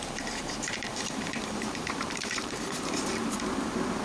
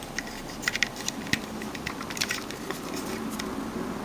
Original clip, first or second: second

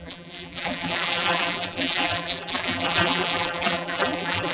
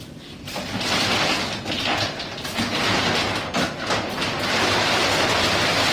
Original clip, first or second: second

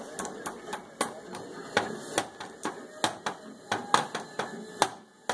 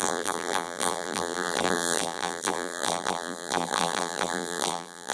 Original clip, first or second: first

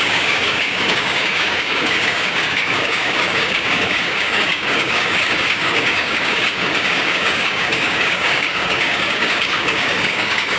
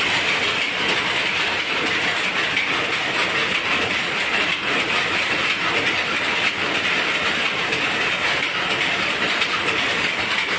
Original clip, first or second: second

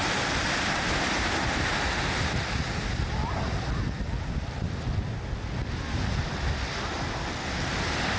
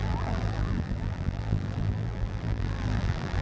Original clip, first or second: first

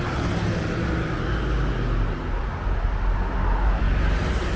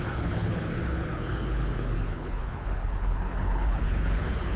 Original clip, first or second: first